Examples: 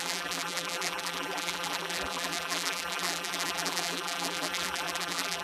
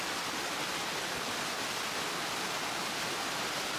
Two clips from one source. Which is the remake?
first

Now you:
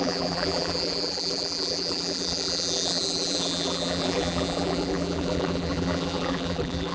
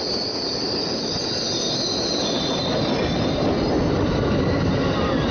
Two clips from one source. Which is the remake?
first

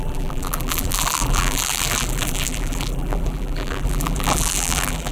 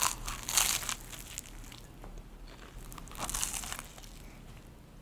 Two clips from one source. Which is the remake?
first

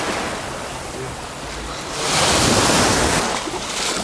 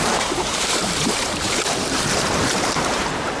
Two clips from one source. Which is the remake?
second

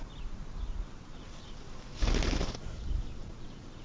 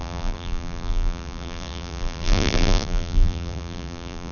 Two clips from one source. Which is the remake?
second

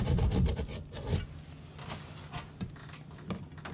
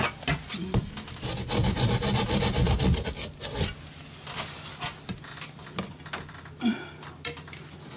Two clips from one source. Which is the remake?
first